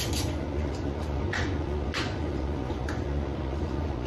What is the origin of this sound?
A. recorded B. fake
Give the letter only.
B